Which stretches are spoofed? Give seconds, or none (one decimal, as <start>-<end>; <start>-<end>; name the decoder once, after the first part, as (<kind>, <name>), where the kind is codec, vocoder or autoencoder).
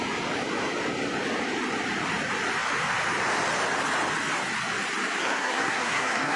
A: 5.2-6.4 (codec, SNAC)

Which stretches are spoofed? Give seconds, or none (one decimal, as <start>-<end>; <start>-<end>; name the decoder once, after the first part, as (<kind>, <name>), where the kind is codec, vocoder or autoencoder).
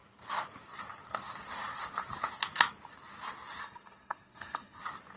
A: 3.6-4.8 (codec, SNAC)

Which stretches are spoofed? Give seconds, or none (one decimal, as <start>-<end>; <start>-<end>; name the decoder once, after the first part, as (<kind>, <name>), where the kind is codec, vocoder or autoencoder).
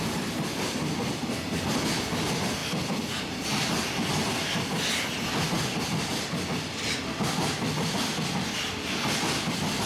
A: none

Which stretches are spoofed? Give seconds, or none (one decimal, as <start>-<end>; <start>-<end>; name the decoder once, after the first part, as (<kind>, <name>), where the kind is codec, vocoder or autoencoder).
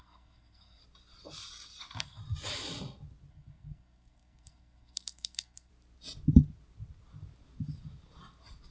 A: 0.0-0.8 (codec, SNAC); 1.8-2.2; 3.3-5.7